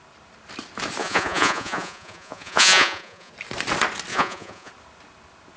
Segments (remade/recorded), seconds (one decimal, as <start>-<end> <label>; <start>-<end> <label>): 0.0-1.0 recorded; 1.0-3.3 remade; 3.3-4.1 recorded; 4.1-4.7 remade; 4.7-5.6 recorded